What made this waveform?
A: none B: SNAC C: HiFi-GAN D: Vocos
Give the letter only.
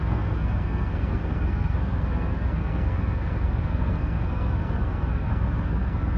B